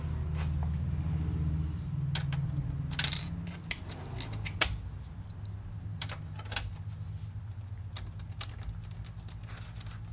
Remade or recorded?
recorded